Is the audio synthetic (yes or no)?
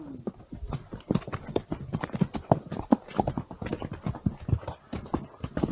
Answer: no